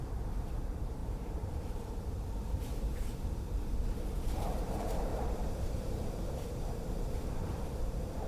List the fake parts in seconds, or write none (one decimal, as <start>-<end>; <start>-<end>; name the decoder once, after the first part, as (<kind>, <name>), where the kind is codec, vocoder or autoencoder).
0.0-2.9 (vocoder, BigVGAN v2); 3.8-8.3